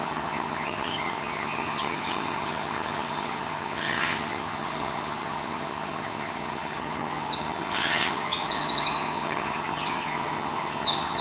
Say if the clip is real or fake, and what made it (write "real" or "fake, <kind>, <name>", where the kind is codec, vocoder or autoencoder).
fake, vocoder, HiFi-GAN